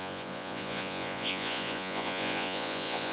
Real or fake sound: fake